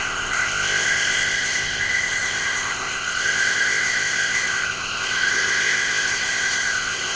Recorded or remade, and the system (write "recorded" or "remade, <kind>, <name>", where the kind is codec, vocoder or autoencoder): remade, codec, ZipCodec